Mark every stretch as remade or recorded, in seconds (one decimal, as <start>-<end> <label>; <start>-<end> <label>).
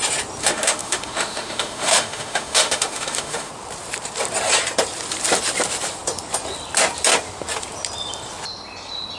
0.0-0.4 recorded; 0.4-3.5 remade; 3.5-9.2 recorded